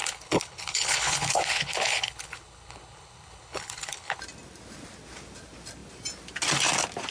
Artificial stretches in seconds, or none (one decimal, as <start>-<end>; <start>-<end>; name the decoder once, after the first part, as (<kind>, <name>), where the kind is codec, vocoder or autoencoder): 0.0-4.2 (codec, HILCodec)